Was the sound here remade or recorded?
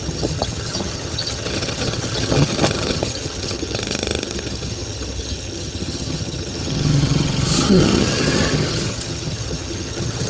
remade